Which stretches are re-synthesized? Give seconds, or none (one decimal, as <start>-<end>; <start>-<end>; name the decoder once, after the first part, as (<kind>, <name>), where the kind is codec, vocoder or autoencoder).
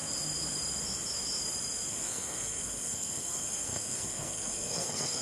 1.9-5.2 (codec, SNAC)